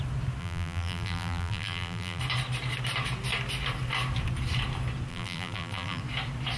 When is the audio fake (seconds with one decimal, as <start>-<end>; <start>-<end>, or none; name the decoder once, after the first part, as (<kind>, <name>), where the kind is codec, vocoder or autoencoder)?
0.4-2.2 (vocoder, BigVGAN v2); 5.1-6.0